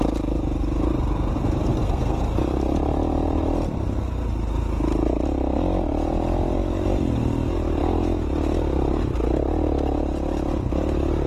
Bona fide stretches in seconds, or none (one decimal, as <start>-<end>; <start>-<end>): 0.0-1.7; 2.2-11.3

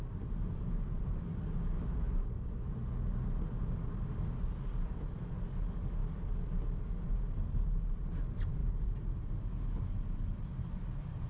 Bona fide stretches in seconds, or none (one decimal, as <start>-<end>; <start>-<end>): 0.0-11.3

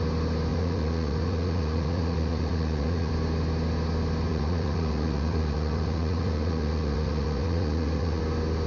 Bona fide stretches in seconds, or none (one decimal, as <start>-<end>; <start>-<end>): 0.0-0.5; 3.1-4.3; 8.2-8.7

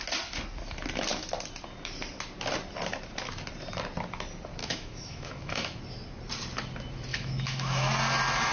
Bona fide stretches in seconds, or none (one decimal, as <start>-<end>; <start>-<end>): 0.0-4.6; 5.8-7.1; 7.9-8.5

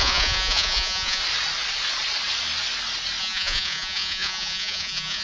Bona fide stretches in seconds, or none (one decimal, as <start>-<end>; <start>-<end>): 1.2-3.2

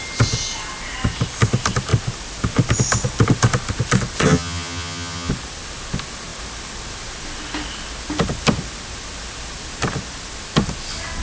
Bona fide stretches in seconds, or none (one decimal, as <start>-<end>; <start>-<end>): 0.0-4.2; 5.3-11.2

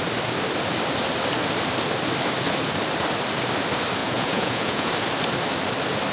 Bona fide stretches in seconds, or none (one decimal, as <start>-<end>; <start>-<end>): 0.0-4.0; 4.9-6.1

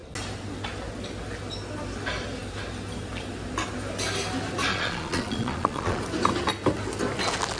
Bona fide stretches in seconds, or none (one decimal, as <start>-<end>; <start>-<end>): 0.0-4.7; 6.0-7.6